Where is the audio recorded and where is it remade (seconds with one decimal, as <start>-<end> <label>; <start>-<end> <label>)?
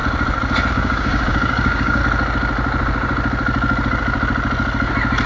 0.0-0.7 recorded; 0.7-2.0 remade; 2.0-5.3 recorded